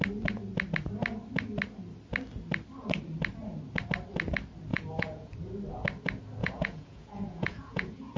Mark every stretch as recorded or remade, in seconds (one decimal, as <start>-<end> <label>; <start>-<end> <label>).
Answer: 0.0-4.7 recorded; 4.7-5.3 remade; 5.3-6.4 recorded; 6.4-8.2 remade